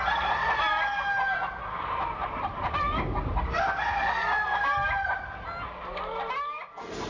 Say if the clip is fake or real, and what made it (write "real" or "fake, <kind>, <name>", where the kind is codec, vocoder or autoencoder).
real